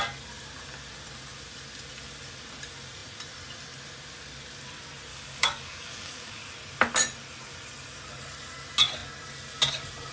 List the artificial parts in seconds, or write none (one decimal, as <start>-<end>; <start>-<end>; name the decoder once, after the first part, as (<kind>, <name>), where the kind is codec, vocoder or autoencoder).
5.1-6.5 (codec, DAC)